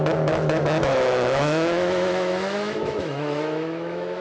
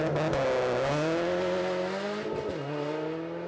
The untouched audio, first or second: second